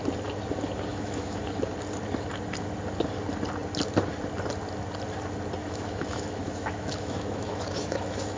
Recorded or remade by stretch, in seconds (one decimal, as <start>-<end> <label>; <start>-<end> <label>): 0.0-0.9 recorded; 0.9-1.4 remade; 1.4-5.6 recorded; 5.6-8.4 remade